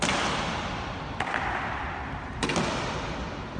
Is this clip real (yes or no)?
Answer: no